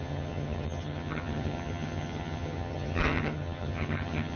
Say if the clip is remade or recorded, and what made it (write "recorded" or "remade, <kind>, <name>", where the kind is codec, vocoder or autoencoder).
remade, vocoder, HiFi-GAN